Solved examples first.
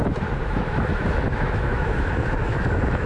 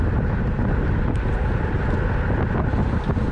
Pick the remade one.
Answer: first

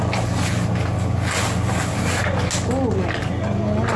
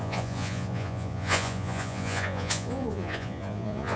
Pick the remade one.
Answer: second